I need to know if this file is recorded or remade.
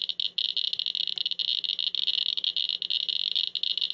recorded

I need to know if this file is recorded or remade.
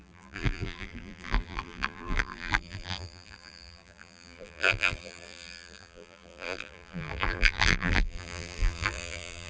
remade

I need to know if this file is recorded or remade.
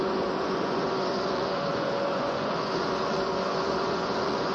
remade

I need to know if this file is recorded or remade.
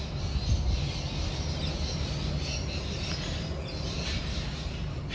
recorded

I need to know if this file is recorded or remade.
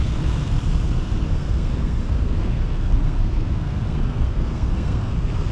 remade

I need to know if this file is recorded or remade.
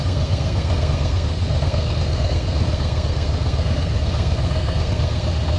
remade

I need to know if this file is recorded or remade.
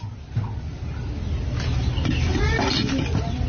recorded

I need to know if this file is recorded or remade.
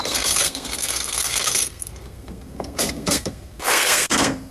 remade